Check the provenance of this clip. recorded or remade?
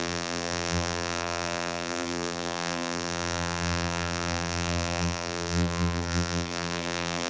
remade